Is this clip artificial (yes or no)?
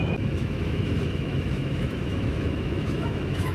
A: yes